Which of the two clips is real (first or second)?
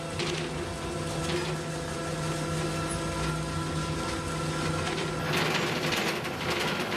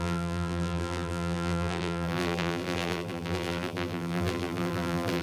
first